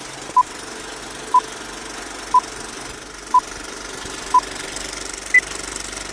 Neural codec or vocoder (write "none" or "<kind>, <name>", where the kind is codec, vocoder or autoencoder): none